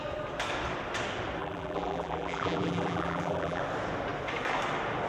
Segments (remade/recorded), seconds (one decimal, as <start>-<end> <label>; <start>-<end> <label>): 0.0-1.4 recorded; 1.4-3.6 remade; 3.6-5.1 recorded

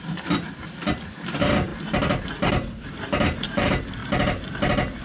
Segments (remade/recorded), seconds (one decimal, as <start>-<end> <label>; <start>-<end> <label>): 0.0-1.7 remade; 1.7-2.5 recorded; 2.5-4.0 remade; 4.0-5.0 recorded